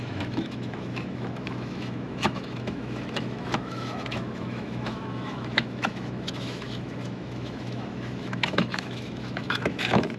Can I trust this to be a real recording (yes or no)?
no